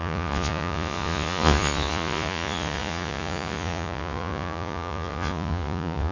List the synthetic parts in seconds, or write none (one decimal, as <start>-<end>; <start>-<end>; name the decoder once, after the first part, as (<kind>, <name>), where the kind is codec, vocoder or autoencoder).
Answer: 0.0-6.1 (vocoder, Vocos)